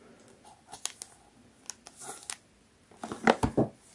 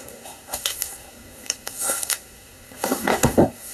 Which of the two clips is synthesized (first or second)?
second